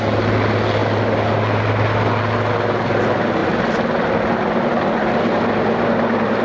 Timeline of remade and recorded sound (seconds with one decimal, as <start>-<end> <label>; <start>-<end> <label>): 0.0-6.4 recorded